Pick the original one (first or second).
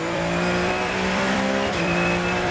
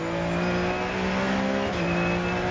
second